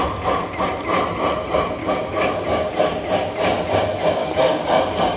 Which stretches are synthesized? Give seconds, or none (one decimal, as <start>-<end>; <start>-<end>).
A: 1.8-2.7; 4.2-4.8